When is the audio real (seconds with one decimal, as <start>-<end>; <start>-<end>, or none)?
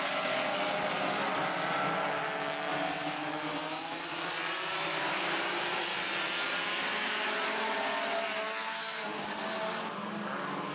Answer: 0.0-2.7; 6.3-10.7